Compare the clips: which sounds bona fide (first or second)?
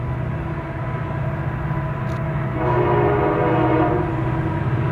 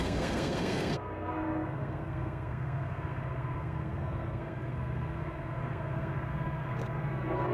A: first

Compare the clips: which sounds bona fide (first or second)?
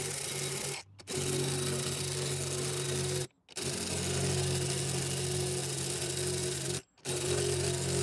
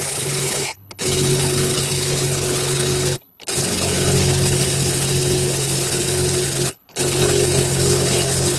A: first